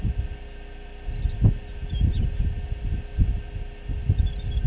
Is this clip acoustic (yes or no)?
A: yes